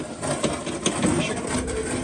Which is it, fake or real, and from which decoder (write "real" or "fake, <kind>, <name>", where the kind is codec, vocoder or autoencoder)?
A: real